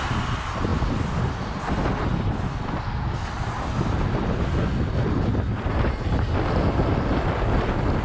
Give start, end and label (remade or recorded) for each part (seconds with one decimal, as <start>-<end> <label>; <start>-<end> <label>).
0.0-8.0 recorded